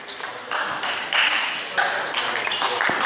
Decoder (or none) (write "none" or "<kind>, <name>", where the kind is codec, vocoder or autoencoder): vocoder, BigVGAN v2